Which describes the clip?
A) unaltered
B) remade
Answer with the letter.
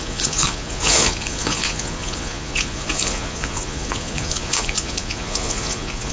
B